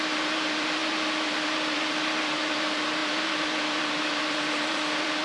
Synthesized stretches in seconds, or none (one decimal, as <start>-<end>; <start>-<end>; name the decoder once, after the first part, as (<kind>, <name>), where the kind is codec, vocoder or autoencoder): 0.0-5.2 (vocoder, BigVGAN v2)